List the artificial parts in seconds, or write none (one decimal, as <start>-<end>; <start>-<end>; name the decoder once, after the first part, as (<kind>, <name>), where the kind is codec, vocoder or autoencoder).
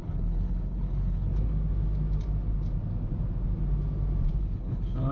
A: 0.0-1.3 (codec, HILCodec); 4.4-5.1